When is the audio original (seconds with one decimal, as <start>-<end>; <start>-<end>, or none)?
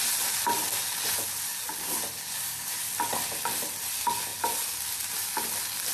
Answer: 0.0-5.9